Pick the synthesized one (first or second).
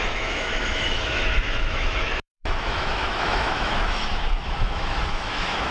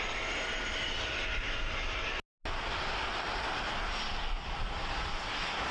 first